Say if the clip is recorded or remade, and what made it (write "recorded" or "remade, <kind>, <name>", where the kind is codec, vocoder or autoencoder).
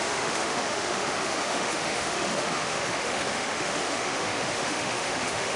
remade, autoencoder, DAC-VAE